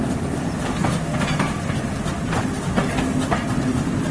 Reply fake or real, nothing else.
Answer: real